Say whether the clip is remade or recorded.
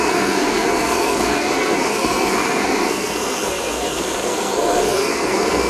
remade